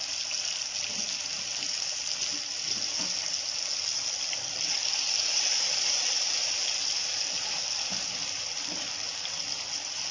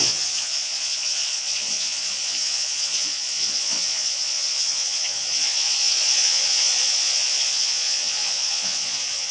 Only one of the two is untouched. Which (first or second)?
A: first